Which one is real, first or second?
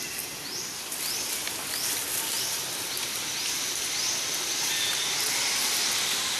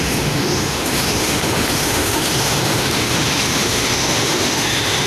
first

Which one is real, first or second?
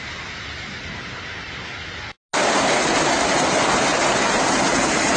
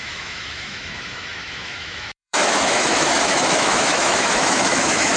first